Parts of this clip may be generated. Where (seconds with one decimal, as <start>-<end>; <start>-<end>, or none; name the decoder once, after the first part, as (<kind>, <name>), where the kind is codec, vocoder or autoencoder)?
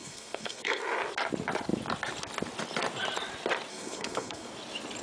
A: 0.0-0.8 (codec, SNAC); 3.7-4.5